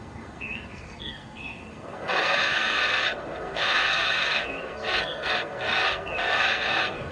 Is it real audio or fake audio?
fake